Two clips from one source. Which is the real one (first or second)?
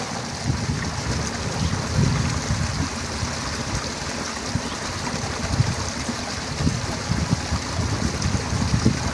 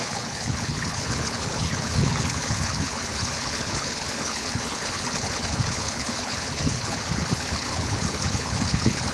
first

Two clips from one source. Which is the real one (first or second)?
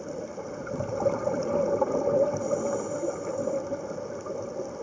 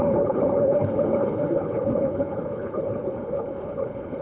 first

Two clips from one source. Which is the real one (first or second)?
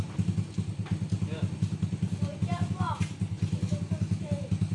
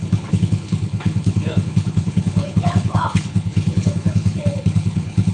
first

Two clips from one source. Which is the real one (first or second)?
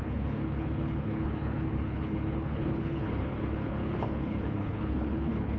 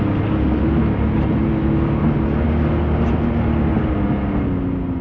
second